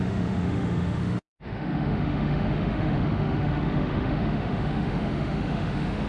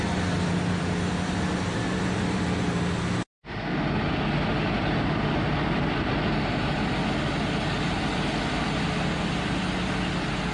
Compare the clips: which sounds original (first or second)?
second